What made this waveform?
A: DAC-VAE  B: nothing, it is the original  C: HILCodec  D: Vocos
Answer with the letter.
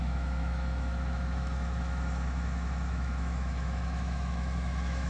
A